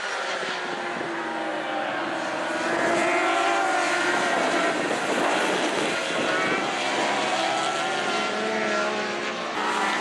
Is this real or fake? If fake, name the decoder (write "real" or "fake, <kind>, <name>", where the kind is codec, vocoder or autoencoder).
real